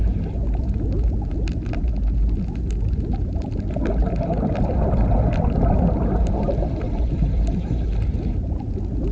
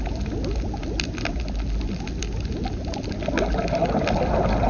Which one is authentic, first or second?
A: second